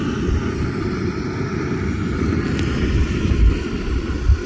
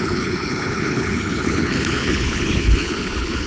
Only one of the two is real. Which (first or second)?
first